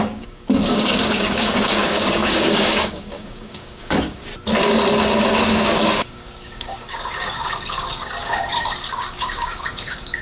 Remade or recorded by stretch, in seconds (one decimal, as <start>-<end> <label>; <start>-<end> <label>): 0.0-4.3 remade; 4.3-5.3 recorded; 5.3-10.2 remade